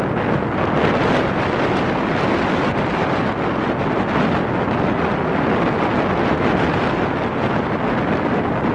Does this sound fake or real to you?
real